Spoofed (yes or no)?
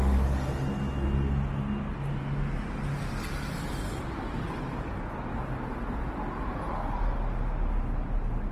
no